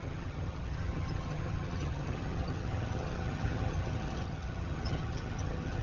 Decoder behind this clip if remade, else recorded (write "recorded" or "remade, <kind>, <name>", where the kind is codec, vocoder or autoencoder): remade, vocoder, HiFi-GAN